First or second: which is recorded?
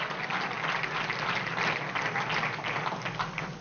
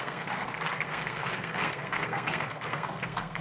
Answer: first